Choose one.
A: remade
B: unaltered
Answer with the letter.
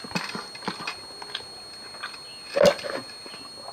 B